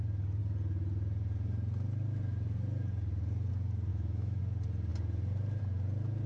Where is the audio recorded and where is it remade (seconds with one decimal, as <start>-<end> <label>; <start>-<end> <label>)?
0.0-3.9 recorded; 3.9-4.4 remade; 4.4-6.3 recorded